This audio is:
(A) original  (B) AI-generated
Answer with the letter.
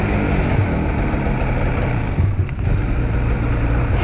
A